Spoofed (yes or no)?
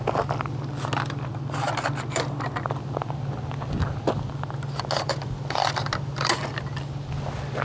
no